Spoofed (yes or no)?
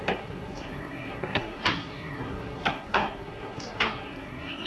yes